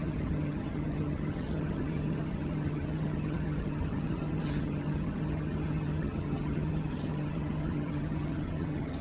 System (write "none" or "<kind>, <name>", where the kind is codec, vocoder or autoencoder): vocoder, HiFi-GAN